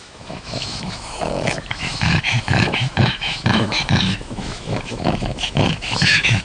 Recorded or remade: remade